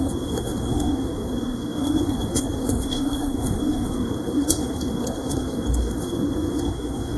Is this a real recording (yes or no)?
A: no